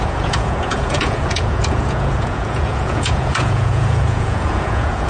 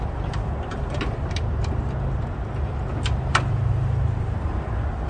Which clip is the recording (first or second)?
second